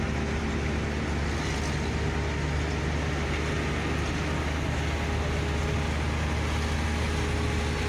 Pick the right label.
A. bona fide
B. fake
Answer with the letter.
A